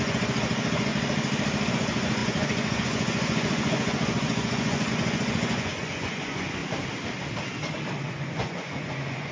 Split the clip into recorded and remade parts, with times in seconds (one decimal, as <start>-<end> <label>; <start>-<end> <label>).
0.0-0.9 remade; 0.9-1.7 recorded; 1.7-6.6 remade; 6.6-8.1 recorded; 8.1-9.3 remade